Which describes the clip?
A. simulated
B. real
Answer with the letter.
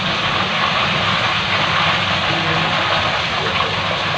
B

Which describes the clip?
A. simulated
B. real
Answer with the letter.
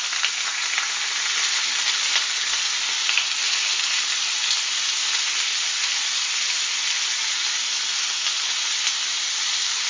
B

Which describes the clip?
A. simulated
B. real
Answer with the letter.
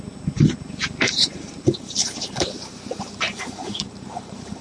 A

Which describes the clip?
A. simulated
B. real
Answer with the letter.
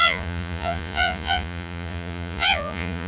A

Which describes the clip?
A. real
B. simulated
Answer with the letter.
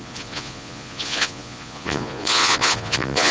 B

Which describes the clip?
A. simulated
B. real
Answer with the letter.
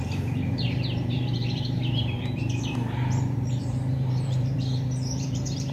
A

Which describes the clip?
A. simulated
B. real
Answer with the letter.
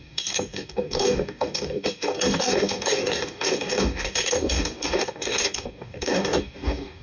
A